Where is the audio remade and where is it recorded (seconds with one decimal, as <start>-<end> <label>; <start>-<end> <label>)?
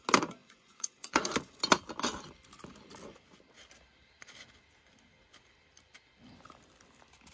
0.0-0.4 recorded; 0.4-1.2 remade; 1.2-7.3 recorded